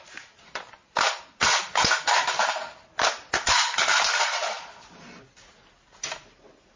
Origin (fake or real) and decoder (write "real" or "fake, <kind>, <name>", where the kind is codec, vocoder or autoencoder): real